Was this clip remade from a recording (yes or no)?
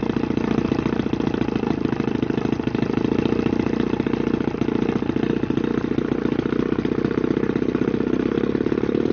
no